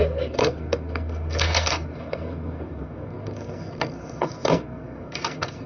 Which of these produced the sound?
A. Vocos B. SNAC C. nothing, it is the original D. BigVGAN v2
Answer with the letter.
B